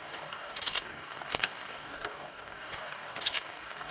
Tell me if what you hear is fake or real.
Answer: fake